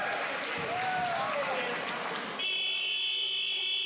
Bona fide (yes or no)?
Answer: yes